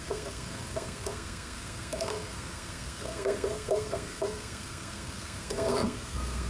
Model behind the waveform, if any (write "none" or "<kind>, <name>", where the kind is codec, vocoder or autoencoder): codec, SNAC